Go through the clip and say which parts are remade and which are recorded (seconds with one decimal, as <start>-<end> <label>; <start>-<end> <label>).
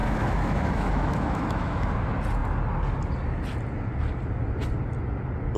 0.0-1.9 remade; 1.9-5.6 recorded